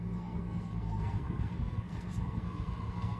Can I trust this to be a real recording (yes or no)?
no